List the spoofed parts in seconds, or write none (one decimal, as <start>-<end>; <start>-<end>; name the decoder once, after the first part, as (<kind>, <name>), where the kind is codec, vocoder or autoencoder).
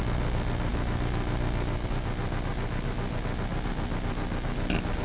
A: none